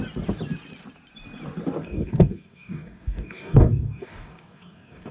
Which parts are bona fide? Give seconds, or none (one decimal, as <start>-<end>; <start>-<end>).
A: 0.0-1.8